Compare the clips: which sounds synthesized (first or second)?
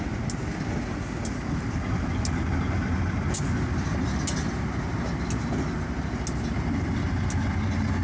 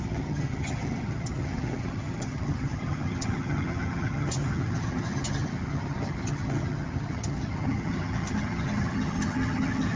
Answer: second